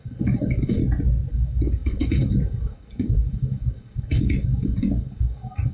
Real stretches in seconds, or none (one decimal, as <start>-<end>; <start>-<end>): 0.8-1.3